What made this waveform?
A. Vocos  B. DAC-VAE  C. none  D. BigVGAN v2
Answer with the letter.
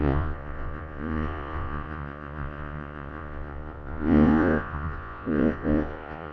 A